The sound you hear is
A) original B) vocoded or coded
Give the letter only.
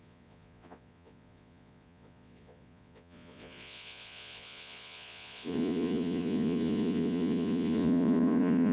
B